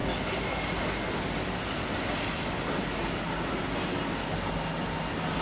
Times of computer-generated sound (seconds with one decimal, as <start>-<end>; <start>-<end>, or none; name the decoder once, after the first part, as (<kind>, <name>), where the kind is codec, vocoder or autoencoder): none